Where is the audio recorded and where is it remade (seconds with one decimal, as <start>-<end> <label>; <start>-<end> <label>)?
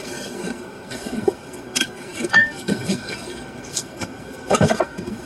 0.0-5.3 remade